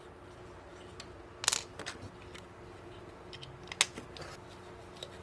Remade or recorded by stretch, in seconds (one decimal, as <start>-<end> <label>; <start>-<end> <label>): 0.0-5.2 recorded